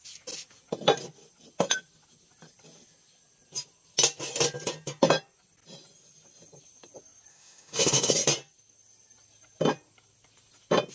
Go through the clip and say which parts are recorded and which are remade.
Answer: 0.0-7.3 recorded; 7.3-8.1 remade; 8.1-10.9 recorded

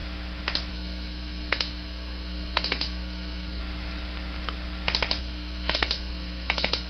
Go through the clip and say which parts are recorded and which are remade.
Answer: 0.0-0.7 recorded; 0.7-3.6 remade; 3.6-5.2 recorded; 5.2-6.9 remade